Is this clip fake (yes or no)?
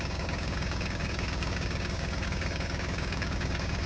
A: yes